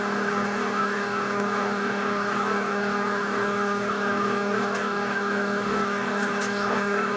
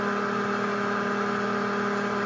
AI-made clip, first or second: first